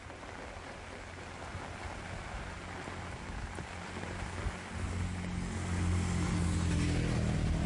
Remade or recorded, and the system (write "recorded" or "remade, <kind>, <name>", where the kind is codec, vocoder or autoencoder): recorded